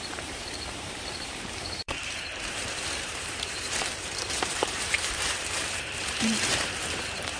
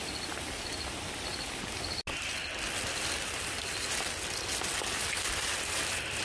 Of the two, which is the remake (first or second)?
first